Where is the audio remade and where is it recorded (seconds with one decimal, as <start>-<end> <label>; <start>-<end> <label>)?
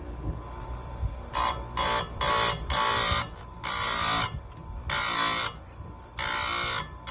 0.0-0.8 recorded; 0.8-4.4 remade; 4.4-7.1 recorded